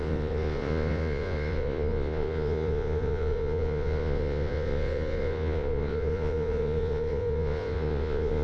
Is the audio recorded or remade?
remade